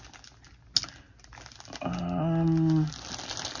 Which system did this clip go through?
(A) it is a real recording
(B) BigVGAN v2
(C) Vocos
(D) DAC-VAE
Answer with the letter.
A